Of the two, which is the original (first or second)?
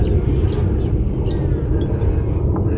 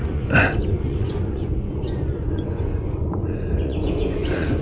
first